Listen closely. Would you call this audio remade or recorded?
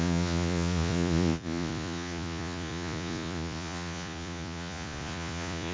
remade